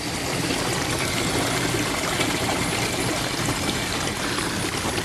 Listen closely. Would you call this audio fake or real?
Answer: real